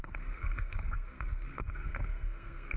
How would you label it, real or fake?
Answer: fake